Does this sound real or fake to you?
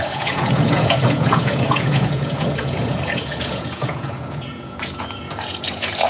fake